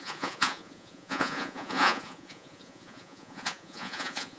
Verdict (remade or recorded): remade